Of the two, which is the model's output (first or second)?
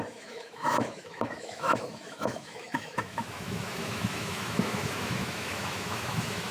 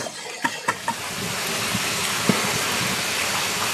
first